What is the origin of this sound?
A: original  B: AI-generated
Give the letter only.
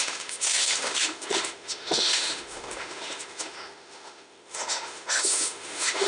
B